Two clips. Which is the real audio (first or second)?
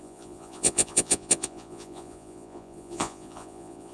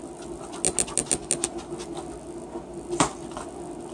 second